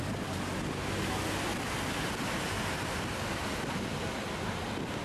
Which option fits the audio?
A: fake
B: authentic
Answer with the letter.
B